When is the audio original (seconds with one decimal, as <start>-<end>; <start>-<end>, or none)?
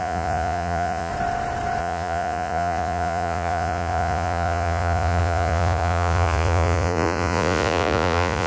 1.1-1.8